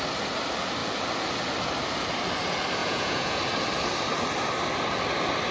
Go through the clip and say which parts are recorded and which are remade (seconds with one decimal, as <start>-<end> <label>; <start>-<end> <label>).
0.0-2.8 recorded; 2.8-3.4 remade; 3.4-5.5 recorded